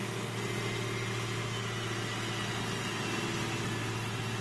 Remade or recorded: recorded